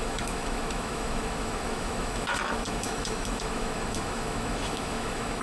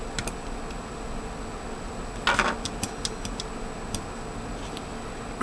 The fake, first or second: first